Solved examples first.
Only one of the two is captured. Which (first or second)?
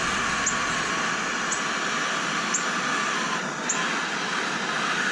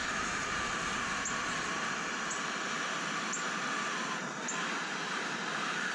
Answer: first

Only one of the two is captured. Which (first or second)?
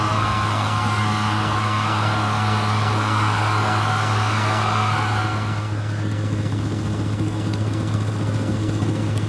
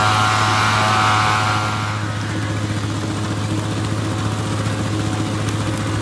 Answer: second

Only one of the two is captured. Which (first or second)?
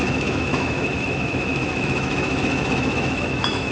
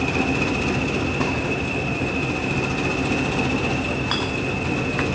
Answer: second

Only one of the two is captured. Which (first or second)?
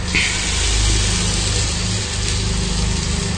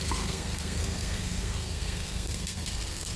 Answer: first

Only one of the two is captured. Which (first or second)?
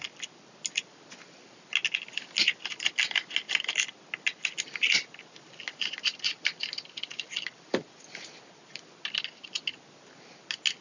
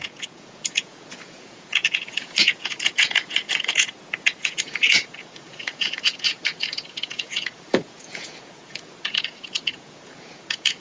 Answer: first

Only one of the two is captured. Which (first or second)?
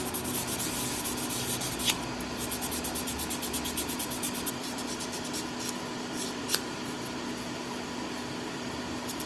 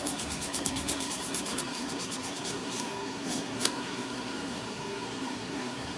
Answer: first